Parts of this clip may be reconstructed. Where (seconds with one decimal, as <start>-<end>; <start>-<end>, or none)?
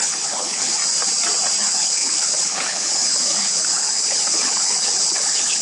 0.0-0.8; 1.6-5.6